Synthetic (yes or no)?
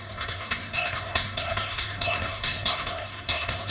yes